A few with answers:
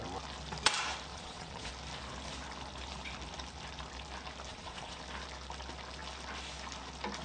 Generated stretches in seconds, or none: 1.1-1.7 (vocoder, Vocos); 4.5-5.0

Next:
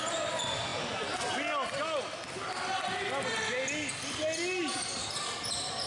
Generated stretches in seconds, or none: none

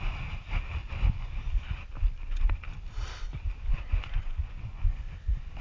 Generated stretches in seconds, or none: 0.8-1.3 (vocoder, Vocos); 3.7-5.0

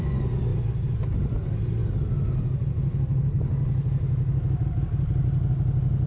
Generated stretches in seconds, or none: none

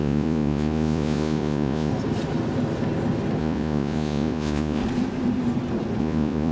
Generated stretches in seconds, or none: 0.0-1.9 (vocoder, Vocos); 3.4-4.8; 6.0-6.5